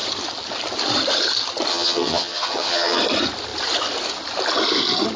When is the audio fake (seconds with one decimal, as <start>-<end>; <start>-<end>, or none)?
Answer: 1.7-3.0